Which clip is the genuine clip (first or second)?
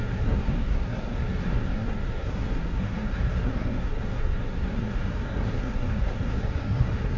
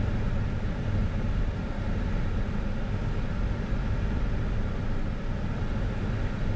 second